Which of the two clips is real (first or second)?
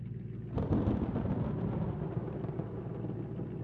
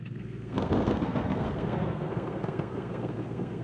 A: first